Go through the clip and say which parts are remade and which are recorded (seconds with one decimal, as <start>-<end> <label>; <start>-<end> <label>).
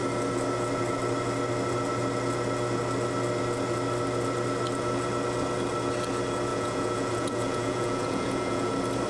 0.0-6.5 recorded; 6.5-8.7 remade; 8.7-9.1 recorded